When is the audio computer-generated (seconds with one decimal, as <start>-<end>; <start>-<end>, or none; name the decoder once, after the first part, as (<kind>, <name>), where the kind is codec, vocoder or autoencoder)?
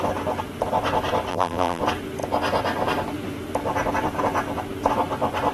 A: 1.3-1.8 (vocoder, BigVGAN v2)